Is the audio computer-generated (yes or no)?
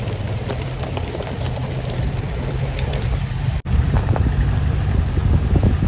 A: yes